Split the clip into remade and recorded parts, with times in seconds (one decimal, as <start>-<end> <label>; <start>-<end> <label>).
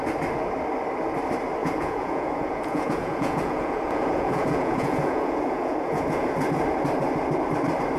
0.0-1.6 recorded; 1.6-6.4 remade; 6.4-8.0 recorded